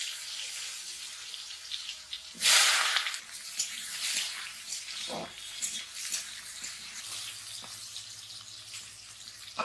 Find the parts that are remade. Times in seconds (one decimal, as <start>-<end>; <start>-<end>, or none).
0.0-7.0; 7.8-9.6